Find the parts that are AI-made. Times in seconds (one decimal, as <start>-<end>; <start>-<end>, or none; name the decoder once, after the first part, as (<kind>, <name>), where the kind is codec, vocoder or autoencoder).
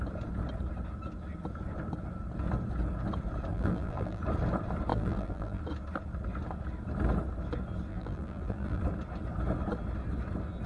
3.5-4.2 (vocoder, BigVGAN v2); 4.9-5.6; 7.9-8.8